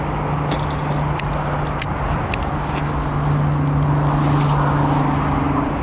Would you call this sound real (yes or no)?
yes